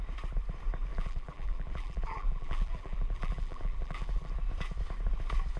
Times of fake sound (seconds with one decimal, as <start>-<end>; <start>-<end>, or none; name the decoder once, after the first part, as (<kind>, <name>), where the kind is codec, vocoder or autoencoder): 0.9-4.3 (vocoder, BigVGAN v2)